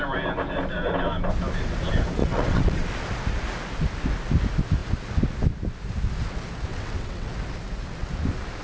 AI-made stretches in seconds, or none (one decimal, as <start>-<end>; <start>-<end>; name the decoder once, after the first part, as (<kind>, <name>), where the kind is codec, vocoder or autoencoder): 2.2-2.8 (vocoder, WaveNeXt); 6.7-7.3